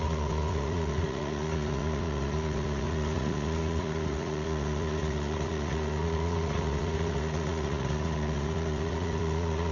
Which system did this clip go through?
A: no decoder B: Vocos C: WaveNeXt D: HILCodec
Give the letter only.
B